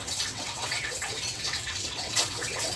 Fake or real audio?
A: fake